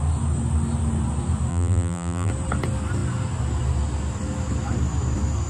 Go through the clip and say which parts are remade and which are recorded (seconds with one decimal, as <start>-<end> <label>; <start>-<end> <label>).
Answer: 0.0-1.5 recorded; 1.5-2.3 remade; 2.3-5.5 recorded